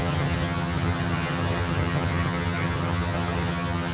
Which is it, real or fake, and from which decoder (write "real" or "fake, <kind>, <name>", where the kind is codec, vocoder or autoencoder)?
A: fake, vocoder, HiFi-GAN